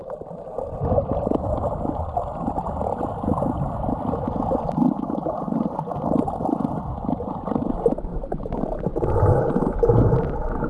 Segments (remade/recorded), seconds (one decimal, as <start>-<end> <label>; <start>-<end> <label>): 0.0-10.7 recorded